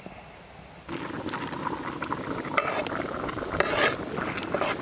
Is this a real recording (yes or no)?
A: yes